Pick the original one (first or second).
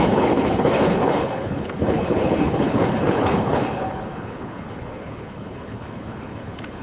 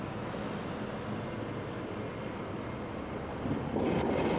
second